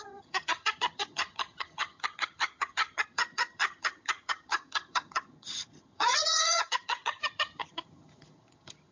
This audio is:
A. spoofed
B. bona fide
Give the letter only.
A